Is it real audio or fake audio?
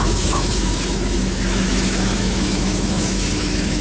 fake